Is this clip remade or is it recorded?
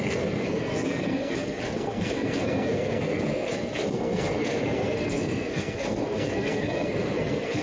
remade